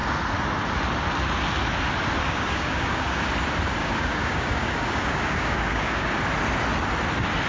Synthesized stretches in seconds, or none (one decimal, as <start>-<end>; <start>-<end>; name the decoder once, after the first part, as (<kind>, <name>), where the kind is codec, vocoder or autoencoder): 2.2-3.2 (codec, DAC); 3.8-6.2